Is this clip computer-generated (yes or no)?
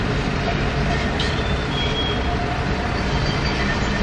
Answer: no